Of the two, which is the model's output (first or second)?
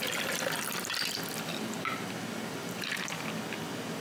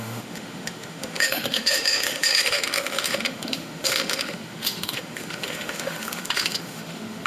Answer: second